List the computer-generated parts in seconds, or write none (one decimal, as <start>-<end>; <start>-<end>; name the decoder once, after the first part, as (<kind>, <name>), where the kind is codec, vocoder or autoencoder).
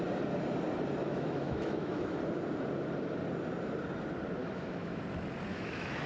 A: 1.0-2.2 (autoencoder, DAC-VAE); 4.4-5.0; 5.5-6.1